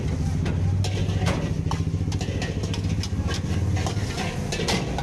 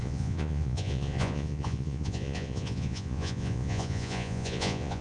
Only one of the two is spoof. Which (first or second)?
second